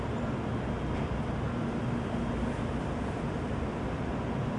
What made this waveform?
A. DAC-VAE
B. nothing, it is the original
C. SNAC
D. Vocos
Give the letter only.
B